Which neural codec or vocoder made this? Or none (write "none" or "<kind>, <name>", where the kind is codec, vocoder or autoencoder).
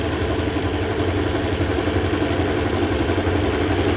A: none